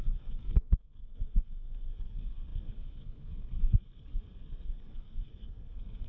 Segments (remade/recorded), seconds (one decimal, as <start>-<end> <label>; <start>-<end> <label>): 0.0-6.1 remade

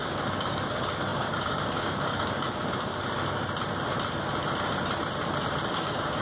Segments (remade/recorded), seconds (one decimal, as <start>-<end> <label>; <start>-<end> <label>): 0.0-2.9 remade; 2.9-5.7 recorded; 5.7-6.2 remade

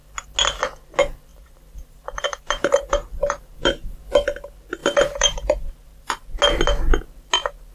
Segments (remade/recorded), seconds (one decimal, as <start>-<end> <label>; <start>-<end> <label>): 0.0-1.3 recorded; 1.3-4.0 remade; 4.0-4.8 recorded; 4.8-6.2 remade; 6.2-7.7 recorded